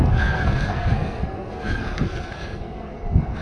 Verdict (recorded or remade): remade